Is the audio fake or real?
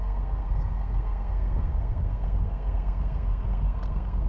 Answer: fake